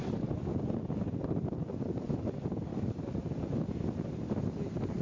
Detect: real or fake real